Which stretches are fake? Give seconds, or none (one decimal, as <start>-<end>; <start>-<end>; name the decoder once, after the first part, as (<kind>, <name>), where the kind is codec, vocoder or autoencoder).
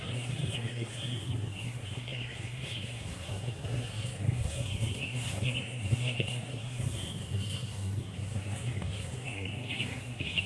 0.0-10.5 (codec, SNAC)